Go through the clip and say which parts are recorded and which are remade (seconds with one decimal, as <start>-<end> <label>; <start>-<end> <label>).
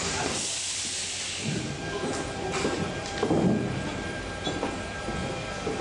0.0-5.8 remade